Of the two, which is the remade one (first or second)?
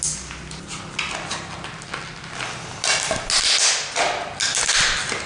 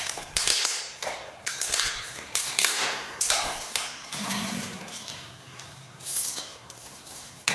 second